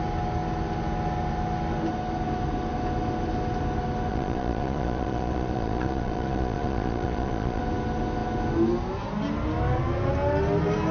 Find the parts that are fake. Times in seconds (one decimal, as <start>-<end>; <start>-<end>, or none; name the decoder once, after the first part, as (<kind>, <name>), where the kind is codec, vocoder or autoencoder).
4.1-7.6 (vocoder, Vocos)